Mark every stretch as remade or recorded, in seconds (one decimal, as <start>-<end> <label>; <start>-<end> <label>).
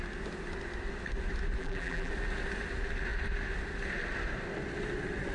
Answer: 0.0-1.6 recorded; 1.6-2.1 remade; 2.1-5.3 recorded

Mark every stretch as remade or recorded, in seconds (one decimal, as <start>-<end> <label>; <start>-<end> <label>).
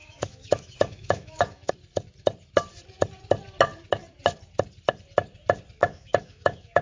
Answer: 0.0-1.7 remade; 1.7-5.8 recorded; 5.8-6.8 remade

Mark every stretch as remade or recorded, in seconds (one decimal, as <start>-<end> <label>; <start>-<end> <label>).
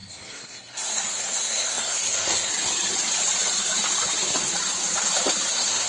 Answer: 0.0-2.5 remade; 2.5-5.5 recorded; 5.5-5.9 remade